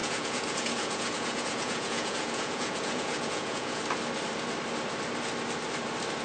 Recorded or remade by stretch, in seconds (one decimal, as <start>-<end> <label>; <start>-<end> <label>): 0.0-3.8 remade; 3.8-6.2 recorded